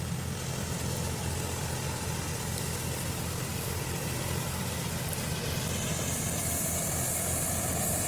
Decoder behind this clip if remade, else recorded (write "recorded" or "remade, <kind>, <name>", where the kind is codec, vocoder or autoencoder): recorded